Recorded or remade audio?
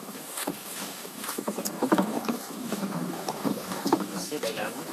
remade